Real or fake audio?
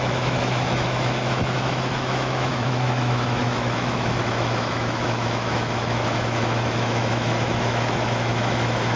fake